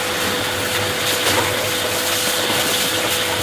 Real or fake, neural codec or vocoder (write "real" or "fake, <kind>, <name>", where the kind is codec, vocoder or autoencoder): real